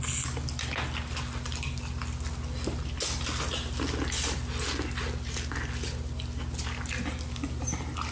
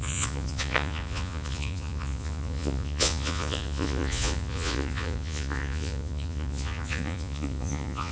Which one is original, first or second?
first